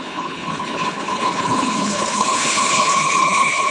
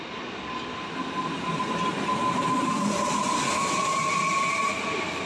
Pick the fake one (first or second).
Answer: first